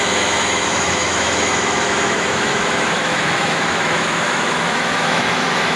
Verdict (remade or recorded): remade